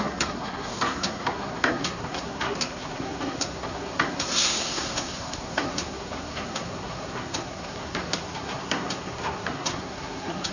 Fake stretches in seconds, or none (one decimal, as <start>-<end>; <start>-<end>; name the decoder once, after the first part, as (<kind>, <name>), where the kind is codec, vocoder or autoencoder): 0.0-10.5 (codec, SNAC)